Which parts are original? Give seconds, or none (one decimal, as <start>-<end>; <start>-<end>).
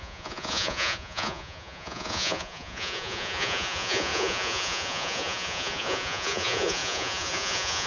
none